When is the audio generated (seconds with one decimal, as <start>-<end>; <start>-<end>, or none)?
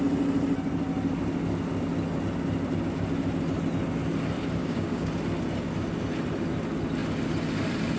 4.6-5.1